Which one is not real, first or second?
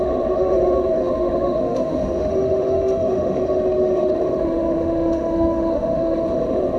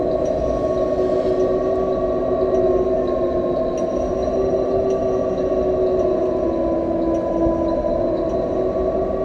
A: first